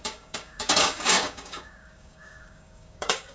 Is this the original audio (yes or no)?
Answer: no